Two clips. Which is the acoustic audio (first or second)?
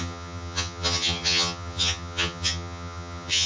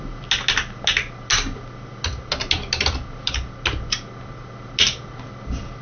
second